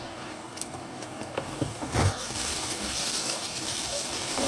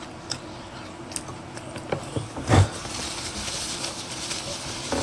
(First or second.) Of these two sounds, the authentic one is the second